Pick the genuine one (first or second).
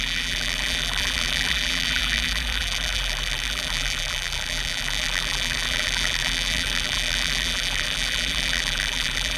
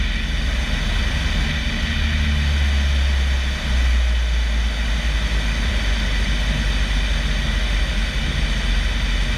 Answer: second